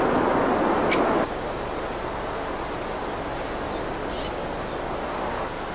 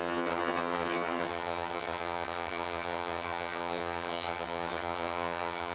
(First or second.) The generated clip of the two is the second